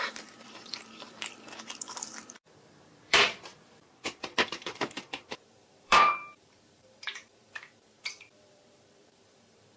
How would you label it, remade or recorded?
remade